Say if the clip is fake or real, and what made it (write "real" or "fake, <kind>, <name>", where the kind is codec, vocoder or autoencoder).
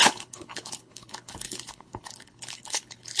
fake, codec, HILCodec